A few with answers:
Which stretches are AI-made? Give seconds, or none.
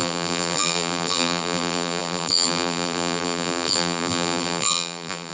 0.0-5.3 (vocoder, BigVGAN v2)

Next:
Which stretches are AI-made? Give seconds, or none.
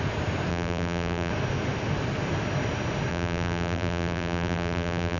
0.5-1.3 (vocoder, BigVGAN v2); 3.1-5.2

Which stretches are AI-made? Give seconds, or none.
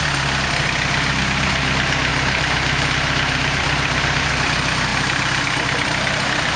2.1-4.3 (vocoder, BigVGAN v2)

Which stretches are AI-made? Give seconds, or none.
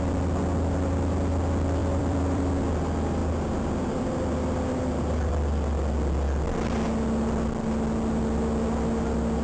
1.8-2.5 (vocoder, BigVGAN v2)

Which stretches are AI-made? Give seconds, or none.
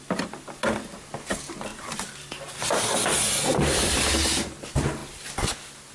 1.7-2.8 (vocoder, BigVGAN v2); 3.5-4.1